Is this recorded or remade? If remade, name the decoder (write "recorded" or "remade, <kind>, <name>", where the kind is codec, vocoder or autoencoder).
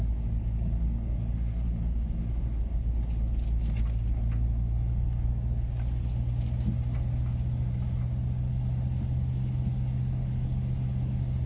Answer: recorded